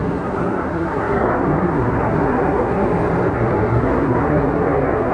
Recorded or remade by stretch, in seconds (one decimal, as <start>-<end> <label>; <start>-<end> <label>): 0.0-2.9 remade; 2.9-3.3 recorded; 3.3-5.1 remade